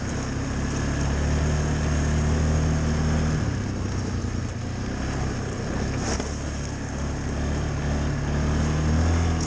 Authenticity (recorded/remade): recorded